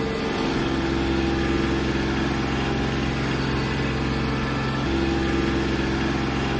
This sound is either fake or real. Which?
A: real